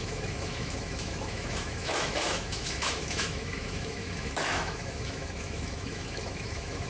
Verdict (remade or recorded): remade